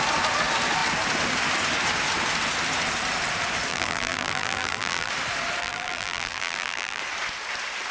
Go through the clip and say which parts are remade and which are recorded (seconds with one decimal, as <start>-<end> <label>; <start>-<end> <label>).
0.0-3.7 recorded; 3.7-5.1 remade; 5.1-5.6 recorded; 5.6-7.0 remade; 7.0-7.9 recorded

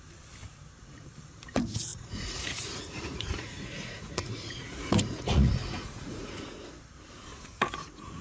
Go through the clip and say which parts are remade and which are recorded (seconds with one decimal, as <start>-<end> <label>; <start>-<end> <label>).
0.0-1.9 recorded; 1.9-6.7 remade; 6.7-7.3 recorded; 7.3-8.2 remade

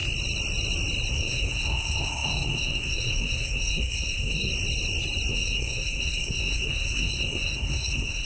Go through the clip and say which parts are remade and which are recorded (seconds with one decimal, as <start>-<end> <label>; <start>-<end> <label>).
0.0-1.1 recorded; 1.1-4.5 remade; 4.5-5.3 recorded; 5.3-8.2 remade

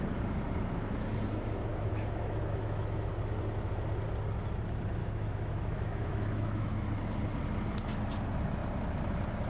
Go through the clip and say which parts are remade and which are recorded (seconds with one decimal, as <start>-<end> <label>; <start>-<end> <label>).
0.0-1.7 recorded; 1.7-3.1 remade; 3.1-5.0 recorded; 5.0-7.0 remade; 7.0-9.5 recorded

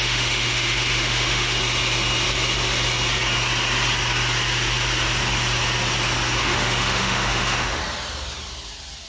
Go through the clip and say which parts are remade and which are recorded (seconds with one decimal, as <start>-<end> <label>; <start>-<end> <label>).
0.0-1.6 remade; 1.6-6.4 recorded; 6.4-7.8 remade; 7.8-9.1 recorded

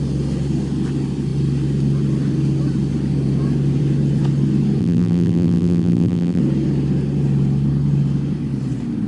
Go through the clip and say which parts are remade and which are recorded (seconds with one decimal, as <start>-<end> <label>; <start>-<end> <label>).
0.0-4.8 recorded; 4.8-6.4 remade; 6.4-9.1 recorded

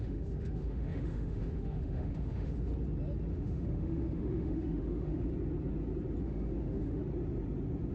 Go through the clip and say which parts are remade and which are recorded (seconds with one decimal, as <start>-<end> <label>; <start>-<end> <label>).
0.0-2.7 remade; 2.7-3.3 recorded; 3.3-5.3 remade; 5.3-6.2 recorded; 6.2-7.0 remade; 7.0-7.9 recorded

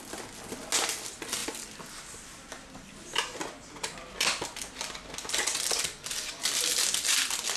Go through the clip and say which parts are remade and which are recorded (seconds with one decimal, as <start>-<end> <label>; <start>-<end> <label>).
0.0-7.6 recorded